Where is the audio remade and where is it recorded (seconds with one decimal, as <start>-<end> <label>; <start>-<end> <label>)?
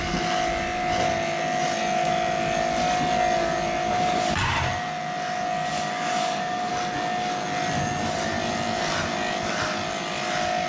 0.0-5.7 recorded; 5.7-6.7 remade; 6.7-10.7 recorded